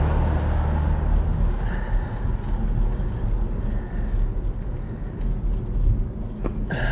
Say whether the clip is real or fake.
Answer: real